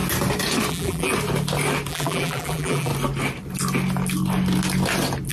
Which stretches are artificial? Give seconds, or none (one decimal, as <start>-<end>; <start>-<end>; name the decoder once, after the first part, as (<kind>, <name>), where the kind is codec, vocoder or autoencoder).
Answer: 0.7-1.1 (vocoder, BigVGAN v2); 1.9-2.9